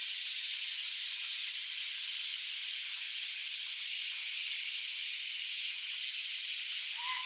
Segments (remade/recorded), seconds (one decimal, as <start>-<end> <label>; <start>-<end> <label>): 0.0-7.3 recorded